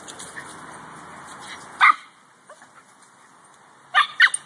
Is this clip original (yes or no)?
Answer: yes